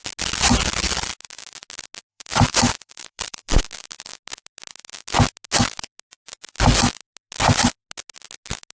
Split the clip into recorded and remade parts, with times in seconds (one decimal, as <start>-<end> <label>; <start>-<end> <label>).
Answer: 0.0-2.1 recorded; 2.1-3.6 remade; 3.6-8.8 recorded